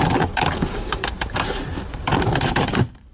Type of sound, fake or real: fake